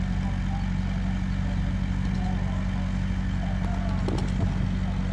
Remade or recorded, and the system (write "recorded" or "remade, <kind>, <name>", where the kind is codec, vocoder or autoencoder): recorded